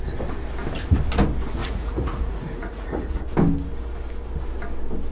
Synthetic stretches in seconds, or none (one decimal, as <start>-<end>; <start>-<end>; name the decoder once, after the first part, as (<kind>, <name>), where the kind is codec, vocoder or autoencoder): 1.6-3.2 (vocoder, Vocos)